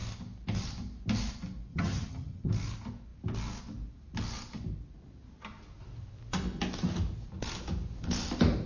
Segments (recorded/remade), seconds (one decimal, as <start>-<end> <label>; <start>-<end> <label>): 0.0-1.7 recorded; 1.7-2.5 remade; 2.5-8.7 recorded